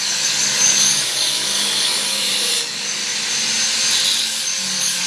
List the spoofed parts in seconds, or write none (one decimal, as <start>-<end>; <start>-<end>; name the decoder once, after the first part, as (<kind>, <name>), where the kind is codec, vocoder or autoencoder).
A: 0.0-3.0 (codec, DAC); 4.2-5.1